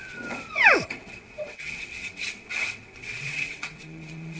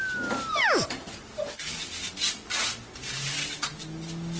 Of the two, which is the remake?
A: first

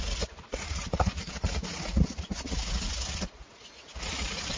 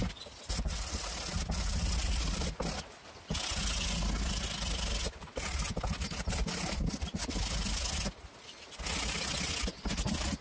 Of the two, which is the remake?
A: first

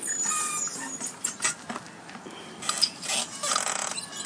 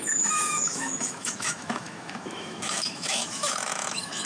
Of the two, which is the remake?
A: second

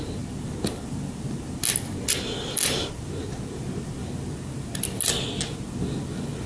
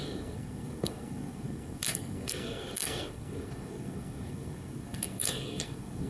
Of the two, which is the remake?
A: second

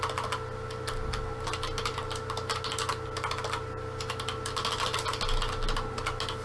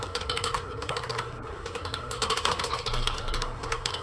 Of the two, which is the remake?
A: second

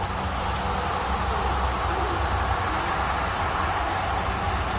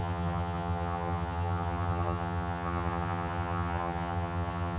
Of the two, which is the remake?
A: second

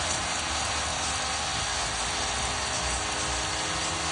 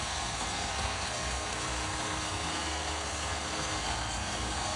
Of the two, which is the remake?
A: second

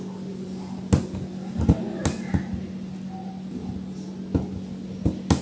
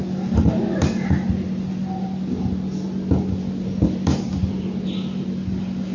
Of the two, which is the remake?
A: second